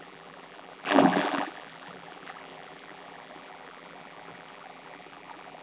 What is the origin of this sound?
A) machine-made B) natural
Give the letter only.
A